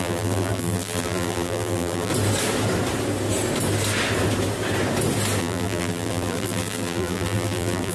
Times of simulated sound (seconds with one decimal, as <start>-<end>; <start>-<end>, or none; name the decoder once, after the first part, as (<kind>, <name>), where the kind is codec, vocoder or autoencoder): 0.0-2.1 (vocoder, BigVGAN v2); 5.4-7.9